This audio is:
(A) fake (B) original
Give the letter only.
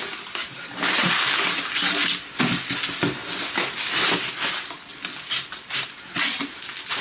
B